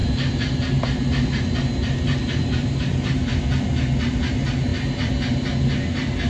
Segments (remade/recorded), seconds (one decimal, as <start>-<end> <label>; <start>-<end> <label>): 0.0-2.4 recorded; 2.4-3.4 remade; 3.4-6.3 recorded